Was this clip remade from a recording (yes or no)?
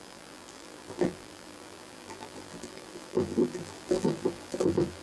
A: yes